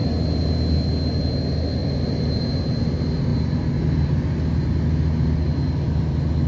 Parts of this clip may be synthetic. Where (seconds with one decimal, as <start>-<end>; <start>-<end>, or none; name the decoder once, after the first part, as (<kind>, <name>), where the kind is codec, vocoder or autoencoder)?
none